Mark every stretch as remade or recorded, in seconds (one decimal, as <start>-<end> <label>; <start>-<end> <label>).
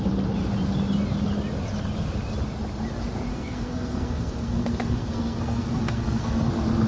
0.0-3.3 recorded; 3.3-6.5 remade; 6.5-6.9 recorded